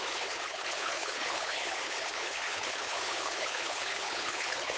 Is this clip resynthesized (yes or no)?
yes